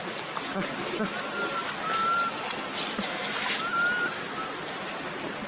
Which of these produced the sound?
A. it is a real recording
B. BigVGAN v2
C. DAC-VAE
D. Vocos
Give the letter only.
A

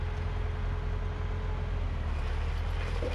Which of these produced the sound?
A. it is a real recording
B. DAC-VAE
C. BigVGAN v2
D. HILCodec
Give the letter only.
A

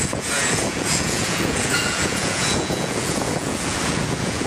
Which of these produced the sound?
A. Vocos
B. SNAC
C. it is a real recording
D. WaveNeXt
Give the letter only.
A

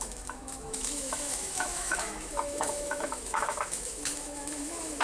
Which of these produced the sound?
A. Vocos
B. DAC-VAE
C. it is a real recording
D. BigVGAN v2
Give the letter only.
B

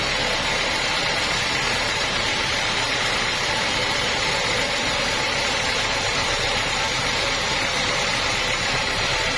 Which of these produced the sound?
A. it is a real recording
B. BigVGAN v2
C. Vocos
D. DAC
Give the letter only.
B